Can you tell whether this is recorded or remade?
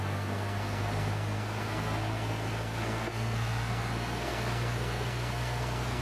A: remade